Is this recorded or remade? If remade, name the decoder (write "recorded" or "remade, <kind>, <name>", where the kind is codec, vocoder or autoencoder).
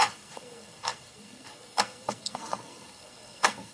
remade, codec, SNAC